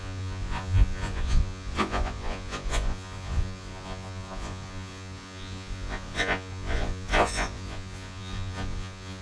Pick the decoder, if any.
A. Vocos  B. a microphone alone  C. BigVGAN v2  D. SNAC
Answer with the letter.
A